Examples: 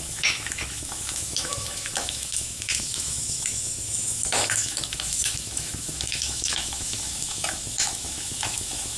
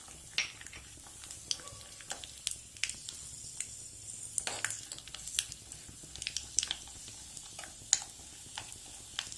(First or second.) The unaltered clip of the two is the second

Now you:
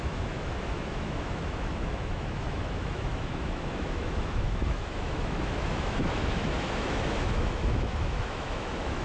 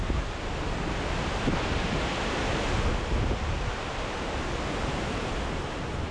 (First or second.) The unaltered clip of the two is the second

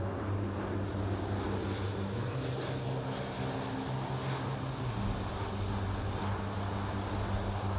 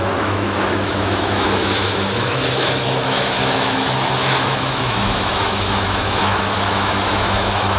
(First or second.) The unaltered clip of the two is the first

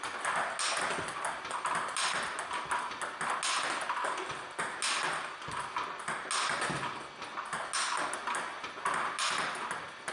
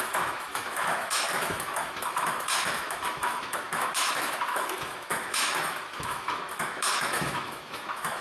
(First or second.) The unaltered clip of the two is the first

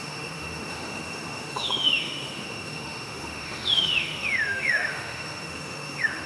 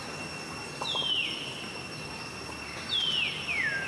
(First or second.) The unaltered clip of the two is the second